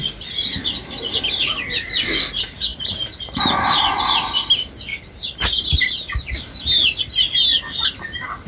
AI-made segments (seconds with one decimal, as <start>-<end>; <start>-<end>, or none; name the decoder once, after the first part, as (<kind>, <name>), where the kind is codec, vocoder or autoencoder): 4.9-6.6 (vocoder, BigVGAN v2)